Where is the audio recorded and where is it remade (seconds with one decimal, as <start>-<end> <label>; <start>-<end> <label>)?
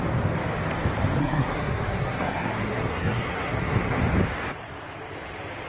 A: 0.0-1.2 recorded; 1.2-4.0 remade; 4.0-5.7 recorded